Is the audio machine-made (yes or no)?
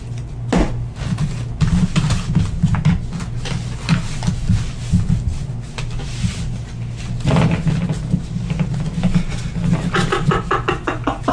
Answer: no